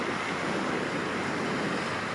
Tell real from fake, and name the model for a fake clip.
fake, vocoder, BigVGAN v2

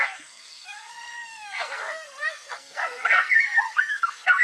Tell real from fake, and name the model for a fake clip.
fake, codec, SNAC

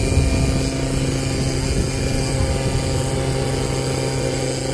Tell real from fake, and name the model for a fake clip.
real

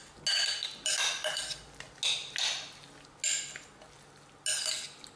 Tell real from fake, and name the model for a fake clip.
real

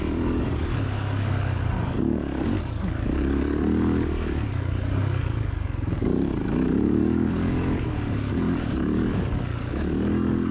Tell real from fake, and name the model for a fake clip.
fake, codec, DAC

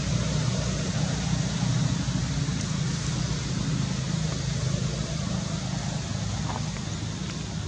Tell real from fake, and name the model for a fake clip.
real